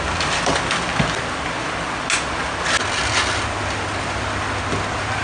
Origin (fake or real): real